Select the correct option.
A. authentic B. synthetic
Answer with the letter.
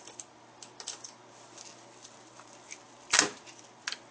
A